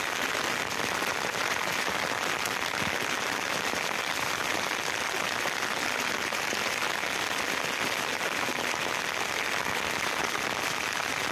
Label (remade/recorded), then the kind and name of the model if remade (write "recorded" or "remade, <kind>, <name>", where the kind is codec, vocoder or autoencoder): recorded